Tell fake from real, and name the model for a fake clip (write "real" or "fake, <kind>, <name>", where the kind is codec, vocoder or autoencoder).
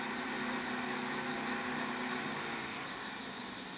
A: real